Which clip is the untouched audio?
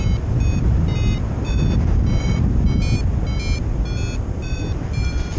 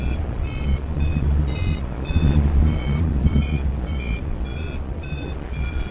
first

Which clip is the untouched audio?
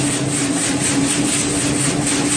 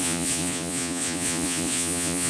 first